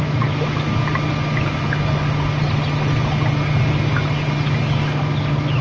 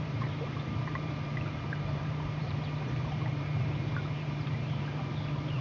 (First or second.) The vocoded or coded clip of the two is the second